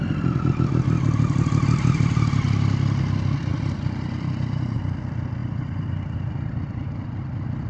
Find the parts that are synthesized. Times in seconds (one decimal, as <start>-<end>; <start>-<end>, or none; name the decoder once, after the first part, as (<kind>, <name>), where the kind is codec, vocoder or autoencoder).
3.5-4.8 (vocoder, BigVGAN v2); 5.4-6.3